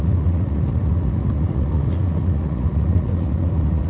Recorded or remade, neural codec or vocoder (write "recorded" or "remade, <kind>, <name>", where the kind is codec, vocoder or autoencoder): remade, vocoder, Vocos